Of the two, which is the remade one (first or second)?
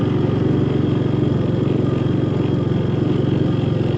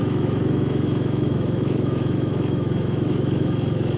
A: second